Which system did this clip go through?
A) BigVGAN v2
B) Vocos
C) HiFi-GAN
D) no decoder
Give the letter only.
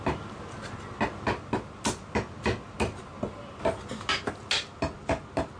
D